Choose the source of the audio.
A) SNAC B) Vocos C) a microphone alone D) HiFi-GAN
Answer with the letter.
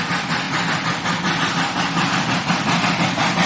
C